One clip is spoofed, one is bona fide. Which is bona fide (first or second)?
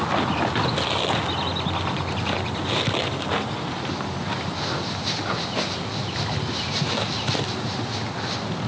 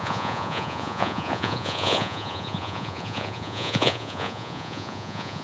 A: first